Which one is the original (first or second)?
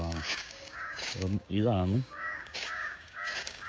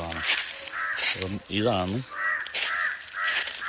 second